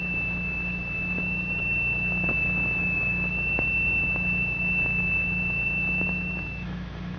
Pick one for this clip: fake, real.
fake